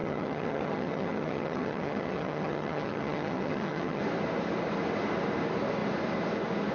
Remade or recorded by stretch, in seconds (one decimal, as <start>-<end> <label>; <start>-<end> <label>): 0.0-4.0 remade; 4.0-6.7 recorded